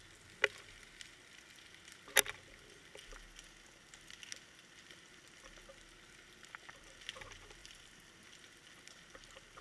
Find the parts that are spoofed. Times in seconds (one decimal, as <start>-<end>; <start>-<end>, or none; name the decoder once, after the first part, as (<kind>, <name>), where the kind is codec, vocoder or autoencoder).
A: 7.6-8.1 (vocoder, BigVGAN v2)